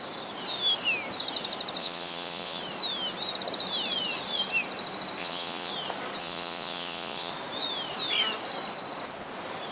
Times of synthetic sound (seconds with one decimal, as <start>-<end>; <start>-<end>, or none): 1.8-2.6; 5.2-5.7; 6.2-7.3